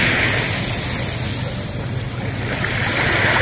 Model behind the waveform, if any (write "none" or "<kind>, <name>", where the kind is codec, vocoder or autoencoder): none